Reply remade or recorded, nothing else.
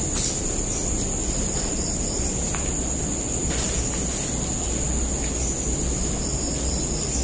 recorded